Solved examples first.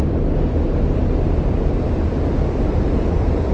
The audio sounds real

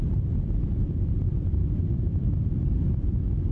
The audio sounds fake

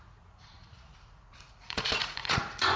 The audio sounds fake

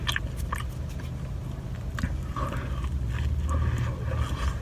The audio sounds real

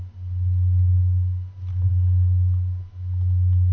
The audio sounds real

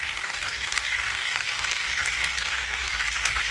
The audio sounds fake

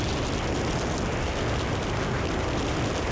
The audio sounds real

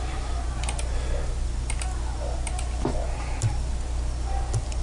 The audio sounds real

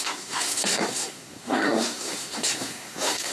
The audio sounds fake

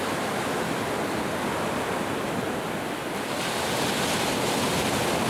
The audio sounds real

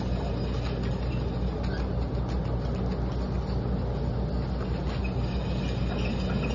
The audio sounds real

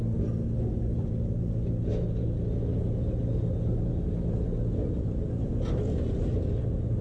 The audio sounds real